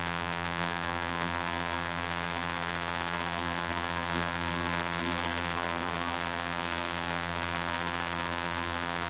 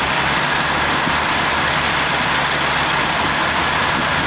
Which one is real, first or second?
second